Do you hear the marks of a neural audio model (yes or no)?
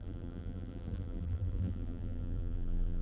yes